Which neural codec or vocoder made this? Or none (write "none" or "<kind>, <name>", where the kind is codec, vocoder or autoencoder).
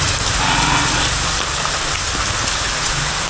none